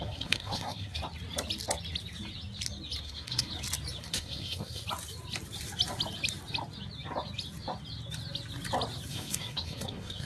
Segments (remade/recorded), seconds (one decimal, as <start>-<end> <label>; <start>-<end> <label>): 0.0-1.0 remade; 1.0-3.0 recorded; 3.0-3.5 remade; 3.5-4.0 recorded; 4.0-4.8 remade; 4.8-9.1 recorded; 9.1-10.3 remade